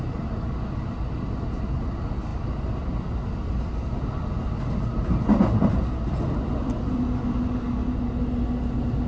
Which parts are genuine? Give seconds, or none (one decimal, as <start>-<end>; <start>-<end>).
0.0-9.1